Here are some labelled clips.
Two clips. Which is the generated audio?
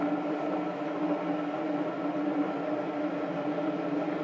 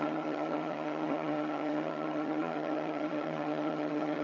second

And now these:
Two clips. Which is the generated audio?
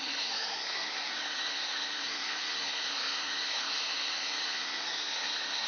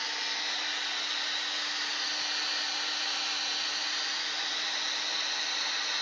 first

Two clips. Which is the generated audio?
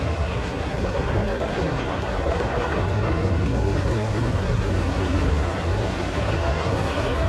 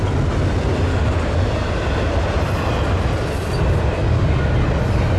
first